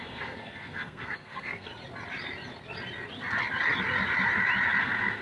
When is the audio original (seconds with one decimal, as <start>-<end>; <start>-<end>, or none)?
1.7-4.8